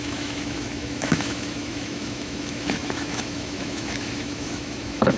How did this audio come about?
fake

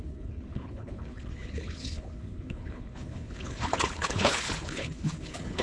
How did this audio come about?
fake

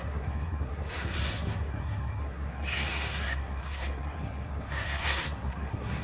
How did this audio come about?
fake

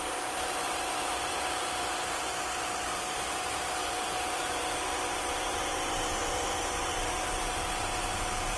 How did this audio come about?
fake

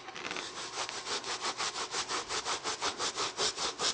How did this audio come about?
real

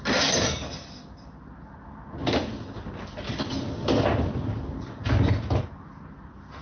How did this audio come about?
real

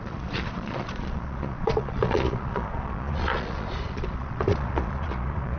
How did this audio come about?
fake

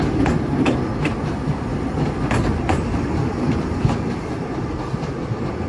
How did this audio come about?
real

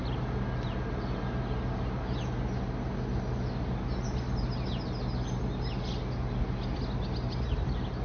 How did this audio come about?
real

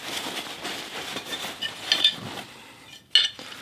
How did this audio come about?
real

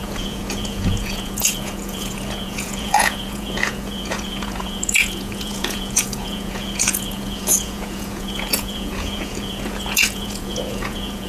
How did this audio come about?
fake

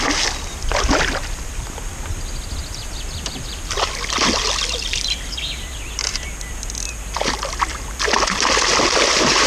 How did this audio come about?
real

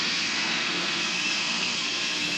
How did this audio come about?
fake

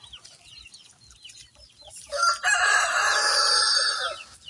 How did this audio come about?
real